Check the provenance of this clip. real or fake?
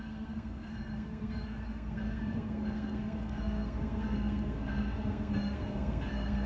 fake